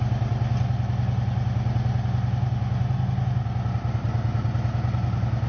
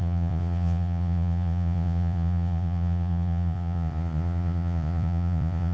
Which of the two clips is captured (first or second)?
first